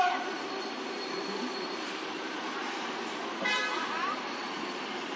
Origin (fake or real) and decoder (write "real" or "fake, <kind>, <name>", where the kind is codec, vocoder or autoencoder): fake, vocoder, BigVGAN v2